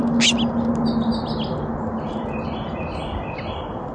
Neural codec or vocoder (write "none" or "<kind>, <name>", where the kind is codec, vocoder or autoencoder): none